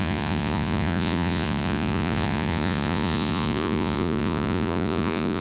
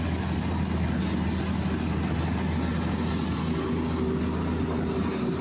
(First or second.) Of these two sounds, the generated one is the first